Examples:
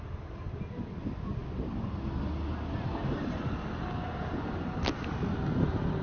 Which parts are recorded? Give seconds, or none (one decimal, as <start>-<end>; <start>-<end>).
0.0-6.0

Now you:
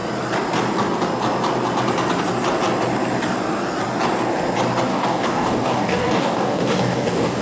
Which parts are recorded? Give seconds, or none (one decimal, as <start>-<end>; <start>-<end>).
0.0-4.9

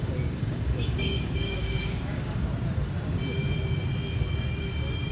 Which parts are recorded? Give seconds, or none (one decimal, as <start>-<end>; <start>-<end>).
2.5-5.1